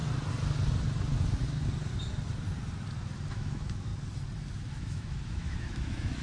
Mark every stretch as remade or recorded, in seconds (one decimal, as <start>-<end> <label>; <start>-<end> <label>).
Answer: 0.0-3.3 recorded; 3.3-3.9 remade; 3.9-4.7 recorded; 4.7-6.2 remade